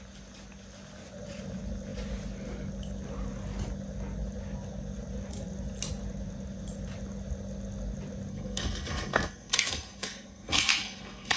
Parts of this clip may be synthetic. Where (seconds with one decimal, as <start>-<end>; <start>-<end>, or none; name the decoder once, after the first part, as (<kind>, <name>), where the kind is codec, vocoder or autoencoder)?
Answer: 8.3-11.4 (codec, SNAC)